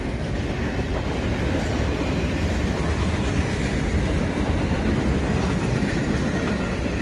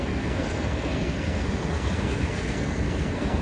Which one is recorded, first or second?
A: first